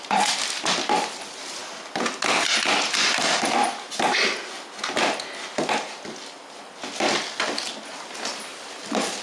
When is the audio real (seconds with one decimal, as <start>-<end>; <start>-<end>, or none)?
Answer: 0.0-9.2